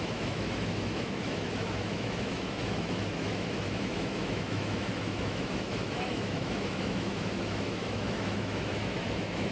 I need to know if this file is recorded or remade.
remade